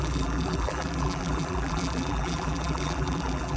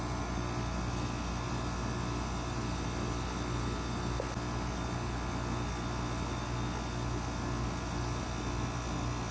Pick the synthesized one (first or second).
first